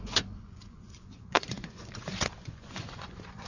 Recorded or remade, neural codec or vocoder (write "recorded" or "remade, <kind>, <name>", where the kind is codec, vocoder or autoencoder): remade, vocoder, Vocos